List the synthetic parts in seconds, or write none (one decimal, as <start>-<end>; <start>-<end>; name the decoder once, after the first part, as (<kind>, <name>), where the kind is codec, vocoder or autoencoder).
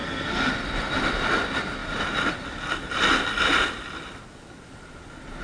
0.0-0.5 (codec, SNAC)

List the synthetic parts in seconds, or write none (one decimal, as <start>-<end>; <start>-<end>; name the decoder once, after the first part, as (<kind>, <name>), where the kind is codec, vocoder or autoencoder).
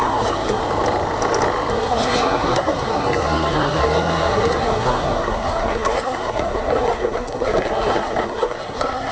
0.0-0.6 (codec, SNAC); 1.7-9.1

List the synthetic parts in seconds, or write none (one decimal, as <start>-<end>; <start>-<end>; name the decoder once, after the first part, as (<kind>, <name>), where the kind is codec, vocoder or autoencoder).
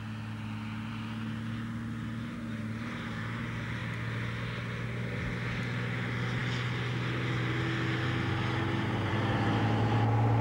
none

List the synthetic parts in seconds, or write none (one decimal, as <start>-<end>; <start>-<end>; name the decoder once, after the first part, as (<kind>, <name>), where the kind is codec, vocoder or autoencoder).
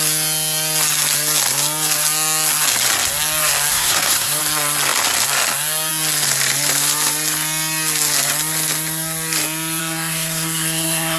3.7-4.4 (codec, SNAC); 9.8-11.2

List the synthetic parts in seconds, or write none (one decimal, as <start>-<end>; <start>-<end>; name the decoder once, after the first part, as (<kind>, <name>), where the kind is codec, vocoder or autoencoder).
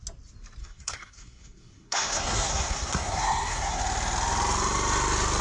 0.6-3.8 (codec, SNAC)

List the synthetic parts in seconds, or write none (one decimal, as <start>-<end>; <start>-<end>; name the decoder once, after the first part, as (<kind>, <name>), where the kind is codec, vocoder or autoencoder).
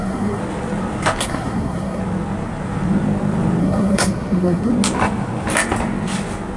0.0-0.4 (codec, SNAC); 1.2-2.0; 3.6-4.7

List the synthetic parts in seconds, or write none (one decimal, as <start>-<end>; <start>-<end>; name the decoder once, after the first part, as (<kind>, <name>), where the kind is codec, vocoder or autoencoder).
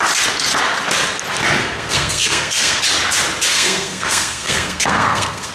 1.6-2.8 (codec, SNAC); 3.5-5.5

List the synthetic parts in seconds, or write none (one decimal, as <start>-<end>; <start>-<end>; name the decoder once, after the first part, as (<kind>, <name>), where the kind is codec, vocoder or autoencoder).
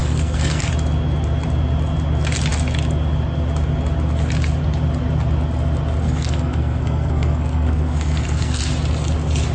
0.0-0.7 (codec, SNAC); 6.0-8.6